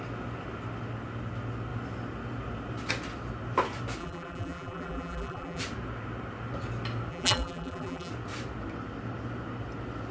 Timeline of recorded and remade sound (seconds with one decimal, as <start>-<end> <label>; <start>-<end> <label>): 0.0-4.0 recorded; 4.0-5.6 remade; 5.6-7.1 recorded; 7.1-8.1 remade; 8.1-10.1 recorded